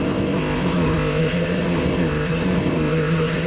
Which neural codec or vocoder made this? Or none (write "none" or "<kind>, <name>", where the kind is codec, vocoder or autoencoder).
codec, ZipCodec